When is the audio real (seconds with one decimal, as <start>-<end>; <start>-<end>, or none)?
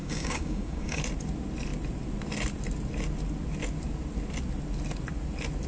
1.0-5.7